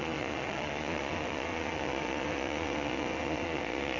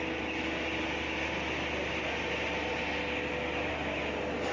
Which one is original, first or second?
second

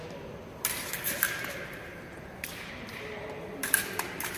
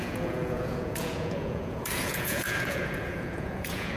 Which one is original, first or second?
first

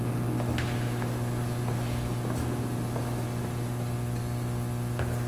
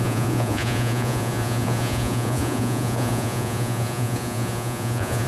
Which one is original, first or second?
first